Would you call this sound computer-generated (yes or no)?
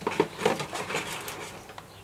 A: no